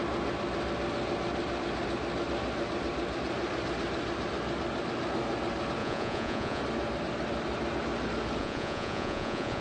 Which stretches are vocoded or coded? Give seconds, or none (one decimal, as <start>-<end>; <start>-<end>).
5.8-6.6; 8.4-9.6